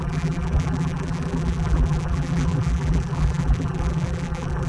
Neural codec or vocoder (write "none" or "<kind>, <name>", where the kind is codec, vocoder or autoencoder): vocoder, BigVGAN v2